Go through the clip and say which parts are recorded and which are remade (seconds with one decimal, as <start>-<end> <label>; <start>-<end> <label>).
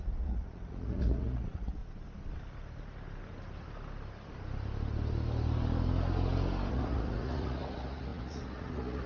0.0-1.8 remade; 1.8-6.7 recorded; 6.7-9.1 remade